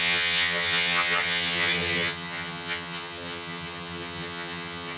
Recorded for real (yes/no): no